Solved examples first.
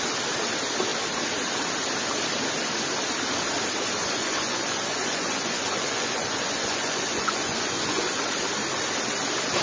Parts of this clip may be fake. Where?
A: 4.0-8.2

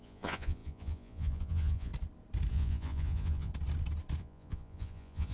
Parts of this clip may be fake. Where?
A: 0.0-1.9; 2.5-3.5; 4.2-5.3

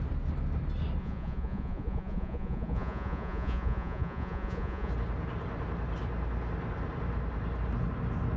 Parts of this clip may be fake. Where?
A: 1.0-4.9

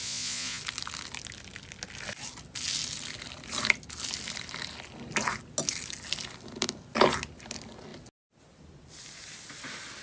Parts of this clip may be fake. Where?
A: 0.0-0.6